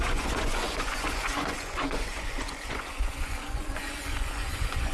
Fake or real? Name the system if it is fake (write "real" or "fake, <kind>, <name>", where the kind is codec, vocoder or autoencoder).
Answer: fake, vocoder, Vocos